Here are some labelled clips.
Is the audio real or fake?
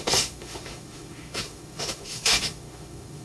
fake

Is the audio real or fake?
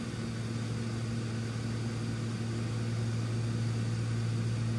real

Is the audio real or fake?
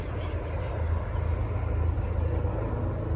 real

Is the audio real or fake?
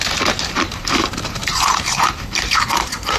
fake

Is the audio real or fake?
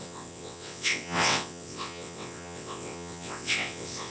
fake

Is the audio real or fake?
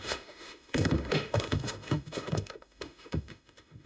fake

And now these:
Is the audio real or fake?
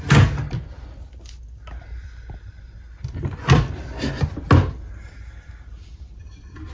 real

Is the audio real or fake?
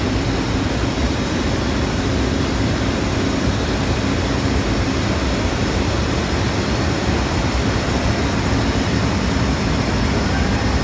real